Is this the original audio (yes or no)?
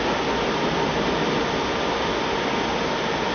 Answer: yes